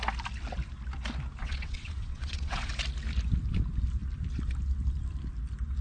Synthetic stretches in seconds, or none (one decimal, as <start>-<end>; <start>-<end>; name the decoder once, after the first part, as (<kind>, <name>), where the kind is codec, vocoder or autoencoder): 1.4-2.7 (vocoder, WaveNeXt)